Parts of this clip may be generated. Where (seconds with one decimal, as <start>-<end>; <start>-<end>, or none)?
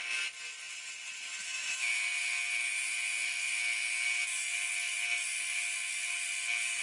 1.4-2.2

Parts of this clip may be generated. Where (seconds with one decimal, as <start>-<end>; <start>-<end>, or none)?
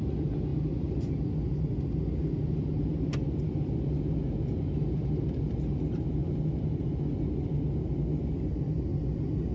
none